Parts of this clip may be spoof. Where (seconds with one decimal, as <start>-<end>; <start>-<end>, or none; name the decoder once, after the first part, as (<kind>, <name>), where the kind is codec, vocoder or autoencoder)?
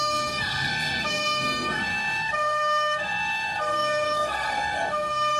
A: 0.0-5.4 (codec, SNAC)